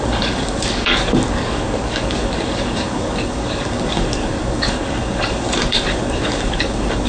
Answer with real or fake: fake